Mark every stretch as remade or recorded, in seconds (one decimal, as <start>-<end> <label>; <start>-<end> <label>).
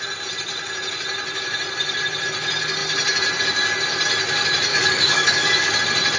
0.0-4.7 recorded; 4.7-5.7 remade; 5.7-6.2 recorded